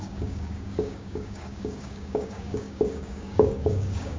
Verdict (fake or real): fake